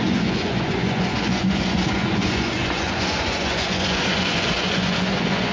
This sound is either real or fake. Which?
fake